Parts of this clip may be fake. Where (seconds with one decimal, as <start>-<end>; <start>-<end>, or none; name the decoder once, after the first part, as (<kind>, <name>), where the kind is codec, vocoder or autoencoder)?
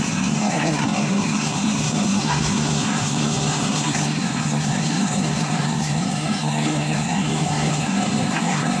0.0-8.8 (codec, SNAC)